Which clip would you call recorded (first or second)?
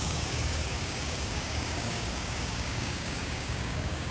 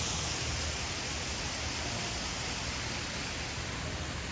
second